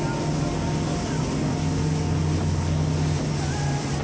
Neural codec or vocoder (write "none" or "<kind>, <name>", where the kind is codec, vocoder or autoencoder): none